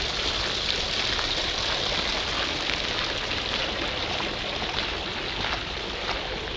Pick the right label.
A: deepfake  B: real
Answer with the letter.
B